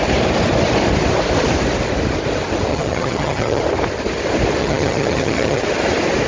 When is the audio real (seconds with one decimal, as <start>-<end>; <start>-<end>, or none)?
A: 0.0-2.7; 3.6-4.6; 5.6-6.3